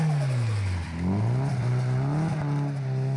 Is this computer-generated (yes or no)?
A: no